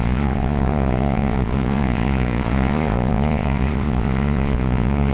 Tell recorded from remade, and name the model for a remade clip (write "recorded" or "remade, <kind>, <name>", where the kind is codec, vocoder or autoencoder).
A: remade, vocoder, Vocos